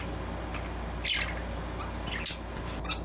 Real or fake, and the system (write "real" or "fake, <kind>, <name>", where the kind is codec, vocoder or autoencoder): real